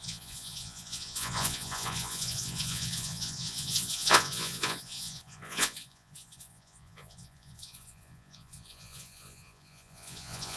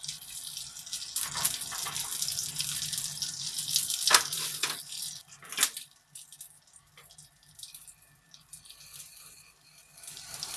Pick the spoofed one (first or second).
first